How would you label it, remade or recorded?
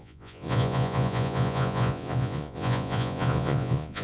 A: remade